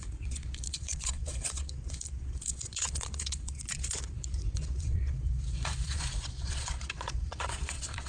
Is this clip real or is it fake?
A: fake